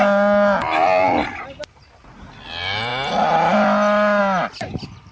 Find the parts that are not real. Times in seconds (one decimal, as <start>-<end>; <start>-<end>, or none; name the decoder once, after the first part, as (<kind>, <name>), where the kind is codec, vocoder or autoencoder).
none